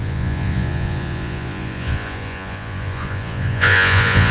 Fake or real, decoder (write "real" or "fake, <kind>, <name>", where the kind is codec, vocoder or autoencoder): fake, vocoder, Vocos